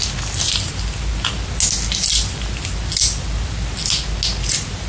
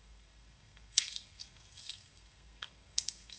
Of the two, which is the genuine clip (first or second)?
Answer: first